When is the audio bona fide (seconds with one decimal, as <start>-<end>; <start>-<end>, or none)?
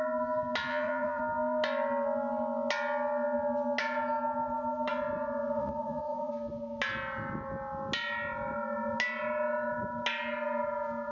0.0-0.7; 1.2-5.6; 6.3-11.1